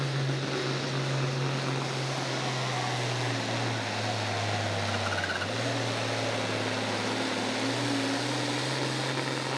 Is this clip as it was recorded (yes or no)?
yes